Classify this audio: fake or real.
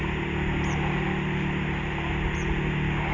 real